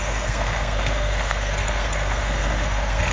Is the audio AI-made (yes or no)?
yes